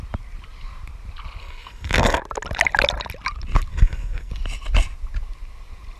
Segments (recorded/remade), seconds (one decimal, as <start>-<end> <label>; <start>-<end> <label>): 0.0-1.4 recorded; 1.4-2.2 remade; 2.2-3.7 recorded; 3.7-4.3 remade; 4.3-6.0 recorded